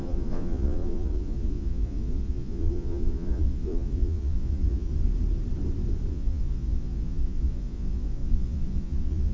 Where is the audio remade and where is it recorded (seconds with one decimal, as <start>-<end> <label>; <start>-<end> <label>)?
0.0-4.9 remade; 4.9-6.1 recorded; 6.1-9.3 remade